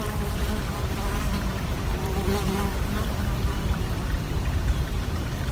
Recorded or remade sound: remade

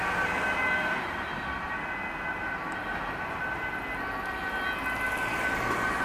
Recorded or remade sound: recorded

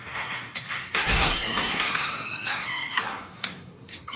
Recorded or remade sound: remade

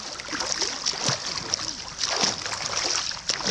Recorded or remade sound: recorded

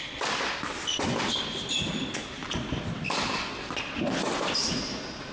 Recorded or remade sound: recorded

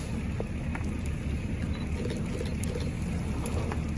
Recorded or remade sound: recorded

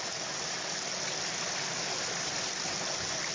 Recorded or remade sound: recorded